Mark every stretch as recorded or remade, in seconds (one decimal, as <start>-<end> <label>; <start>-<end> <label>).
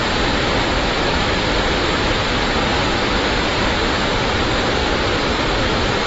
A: 0.0-4.8 recorded; 4.8-5.4 remade; 5.4-6.1 recorded